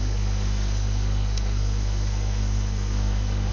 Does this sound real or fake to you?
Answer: fake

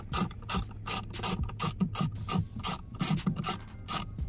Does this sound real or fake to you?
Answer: real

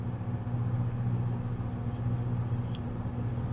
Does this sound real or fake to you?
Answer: real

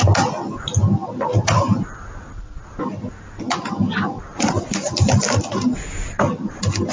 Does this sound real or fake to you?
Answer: real